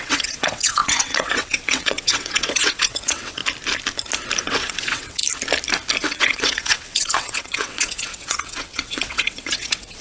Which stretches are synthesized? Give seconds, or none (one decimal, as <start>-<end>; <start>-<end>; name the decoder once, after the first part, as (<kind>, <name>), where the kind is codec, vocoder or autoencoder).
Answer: 0.0-3.4 (vocoder, WaveNeXt); 4.4-5.2; 6.0-10.0